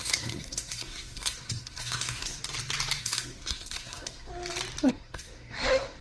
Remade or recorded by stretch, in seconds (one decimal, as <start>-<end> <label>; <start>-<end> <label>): 0.0-2.4 remade; 2.4-3.0 recorded; 3.0-4.3 remade; 4.3-4.9 recorded; 4.9-6.0 remade